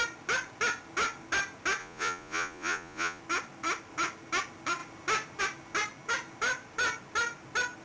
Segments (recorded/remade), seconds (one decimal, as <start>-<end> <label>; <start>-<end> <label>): 0.0-1.8 recorded; 1.8-3.2 remade; 3.2-7.8 recorded